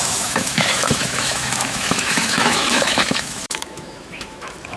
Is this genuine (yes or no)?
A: no